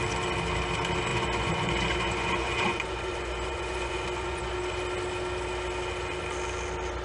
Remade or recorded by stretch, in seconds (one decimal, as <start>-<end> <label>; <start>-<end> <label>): 0.0-1.1 recorded; 1.1-4.5 remade; 4.5-7.0 recorded